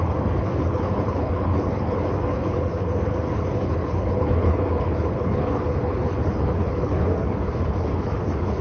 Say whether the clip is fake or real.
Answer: fake